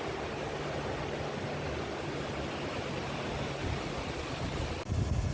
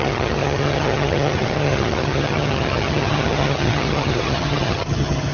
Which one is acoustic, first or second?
first